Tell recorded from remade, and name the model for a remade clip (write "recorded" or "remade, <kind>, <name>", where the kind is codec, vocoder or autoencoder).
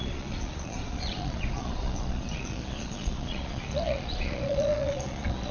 remade, vocoder, Vocos